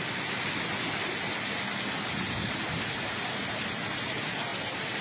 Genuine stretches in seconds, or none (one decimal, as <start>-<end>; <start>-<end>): 0.0-5.0